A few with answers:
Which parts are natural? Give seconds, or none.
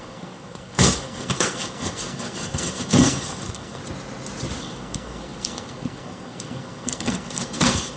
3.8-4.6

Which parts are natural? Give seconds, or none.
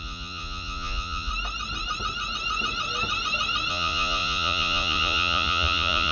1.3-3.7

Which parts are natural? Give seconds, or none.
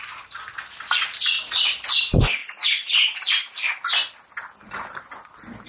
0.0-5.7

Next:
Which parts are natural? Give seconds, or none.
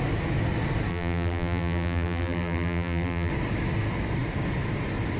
0.0-0.9; 3.3-5.2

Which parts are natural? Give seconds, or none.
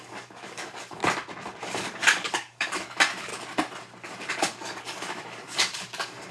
1.0-1.6; 3.3-4.3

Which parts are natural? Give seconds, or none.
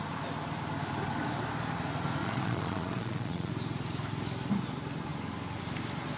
0.0-2.2; 3.5-6.2